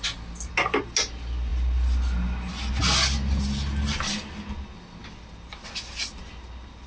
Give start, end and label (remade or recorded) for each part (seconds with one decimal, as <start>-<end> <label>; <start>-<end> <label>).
0.0-6.9 recorded